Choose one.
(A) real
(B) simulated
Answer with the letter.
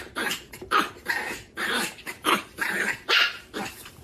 B